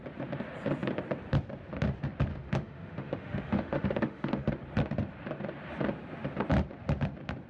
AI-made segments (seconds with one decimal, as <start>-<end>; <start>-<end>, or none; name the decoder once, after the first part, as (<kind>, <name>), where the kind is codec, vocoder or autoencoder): 2.3-4.5 (autoencoder, DAC-VAE)